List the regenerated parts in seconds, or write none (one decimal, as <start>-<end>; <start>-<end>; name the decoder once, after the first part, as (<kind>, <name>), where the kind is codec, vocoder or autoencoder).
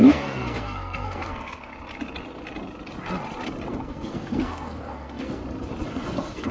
0.0-1.7 (codec, SNAC); 3.7-5.4; 5.9-6.5